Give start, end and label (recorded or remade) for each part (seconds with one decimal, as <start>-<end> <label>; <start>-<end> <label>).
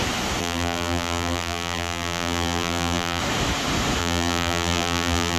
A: 0.0-0.4 recorded; 0.4-3.2 remade; 3.2-4.0 recorded; 4.0-5.4 remade